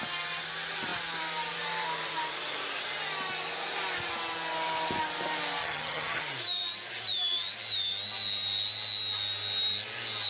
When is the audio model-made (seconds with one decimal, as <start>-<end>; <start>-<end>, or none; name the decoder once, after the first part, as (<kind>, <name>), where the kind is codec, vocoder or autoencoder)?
5.6-6.2 (vocoder, HiFi-GAN)